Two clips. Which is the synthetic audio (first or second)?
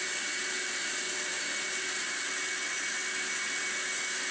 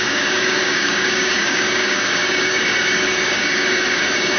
second